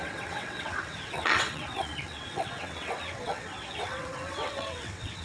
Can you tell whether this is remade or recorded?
remade